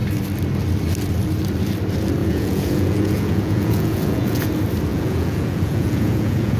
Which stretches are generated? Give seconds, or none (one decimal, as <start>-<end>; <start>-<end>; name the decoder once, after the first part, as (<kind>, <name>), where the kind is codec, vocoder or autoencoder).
2.2-4.5 (vocoder, Vocos); 4.9-6.6